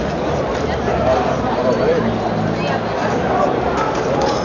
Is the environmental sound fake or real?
fake